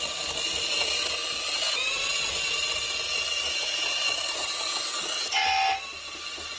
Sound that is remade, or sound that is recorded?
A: recorded